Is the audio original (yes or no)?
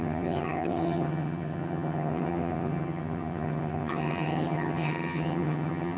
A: no